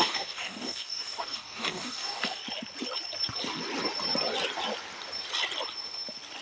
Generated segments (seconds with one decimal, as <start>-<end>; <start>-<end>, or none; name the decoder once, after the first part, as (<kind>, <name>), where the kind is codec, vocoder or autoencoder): 0.0-2.4 (codec, DAC)